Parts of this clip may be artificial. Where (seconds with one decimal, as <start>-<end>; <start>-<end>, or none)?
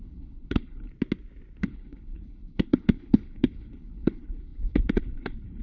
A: 0.0-0.9; 1.6-5.6